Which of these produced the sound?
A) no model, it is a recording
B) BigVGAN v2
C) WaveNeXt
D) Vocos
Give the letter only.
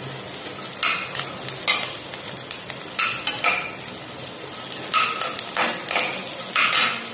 A